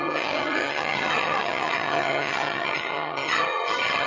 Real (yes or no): no